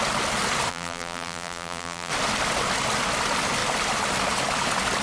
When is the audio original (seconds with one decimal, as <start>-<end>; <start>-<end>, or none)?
0.0-0.7; 2.1-5.0